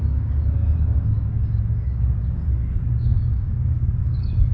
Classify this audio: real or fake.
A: fake